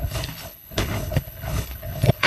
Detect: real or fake fake